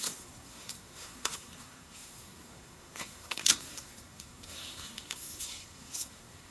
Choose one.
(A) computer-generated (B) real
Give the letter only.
A